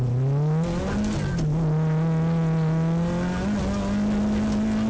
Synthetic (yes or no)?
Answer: no